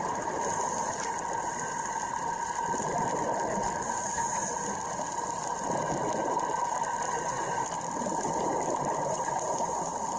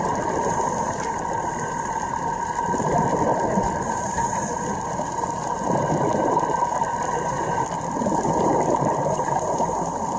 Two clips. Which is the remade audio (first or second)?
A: second